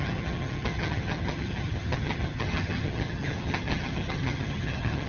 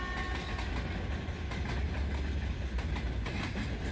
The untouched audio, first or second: second